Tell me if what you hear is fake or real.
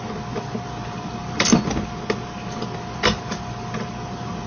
real